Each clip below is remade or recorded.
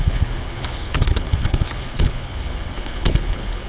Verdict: remade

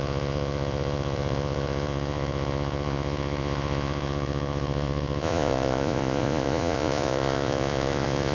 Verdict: remade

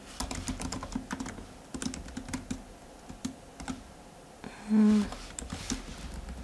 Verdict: recorded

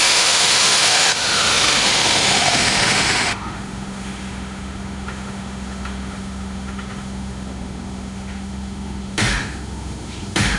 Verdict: remade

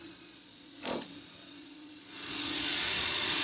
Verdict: remade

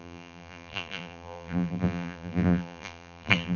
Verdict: remade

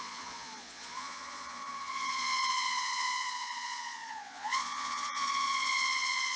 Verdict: remade